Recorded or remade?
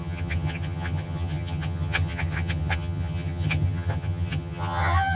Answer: remade